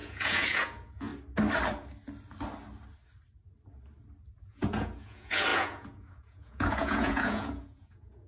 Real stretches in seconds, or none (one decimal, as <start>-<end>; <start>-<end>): 1.1-4.4